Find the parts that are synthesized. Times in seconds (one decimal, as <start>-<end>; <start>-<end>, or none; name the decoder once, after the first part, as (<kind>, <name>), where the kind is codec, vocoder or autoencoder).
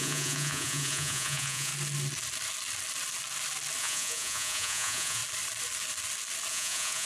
0.0-1.7 (vocoder, Vocos); 3.8-5.2; 6.5-7.1